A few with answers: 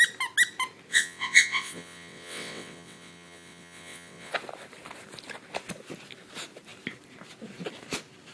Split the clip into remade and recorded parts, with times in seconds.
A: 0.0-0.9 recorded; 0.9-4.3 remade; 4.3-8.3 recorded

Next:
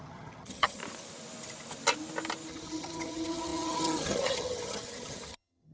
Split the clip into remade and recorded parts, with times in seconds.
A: 0.0-0.8 remade; 0.8-2.5 recorded; 2.5-5.7 remade

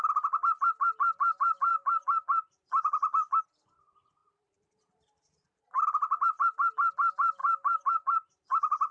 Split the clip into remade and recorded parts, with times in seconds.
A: 0.0-4.2 recorded; 4.2-5.8 remade; 5.8-7.4 recorded; 7.4-8.9 remade

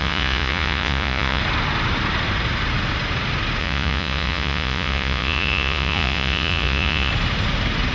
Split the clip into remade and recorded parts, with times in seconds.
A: 0.0-1.4 remade; 1.4-3.6 recorded; 3.6-7.1 remade; 7.1-7.9 recorded

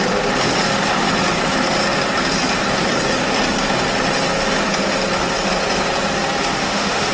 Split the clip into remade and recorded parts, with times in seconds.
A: 0.0-6.5 recorded; 6.5-7.1 remade